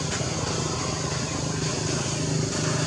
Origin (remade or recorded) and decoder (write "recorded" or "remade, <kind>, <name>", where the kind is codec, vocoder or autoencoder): recorded